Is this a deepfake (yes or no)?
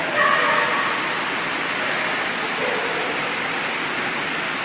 no